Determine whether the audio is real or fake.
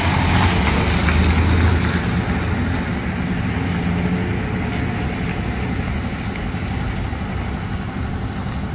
real